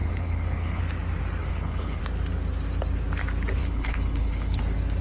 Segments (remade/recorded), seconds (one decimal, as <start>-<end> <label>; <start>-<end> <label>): 0.0-0.8 remade; 0.8-1.4 recorded; 1.4-2.0 remade; 2.0-3.6 recorded; 3.6-4.6 remade; 4.6-5.0 recorded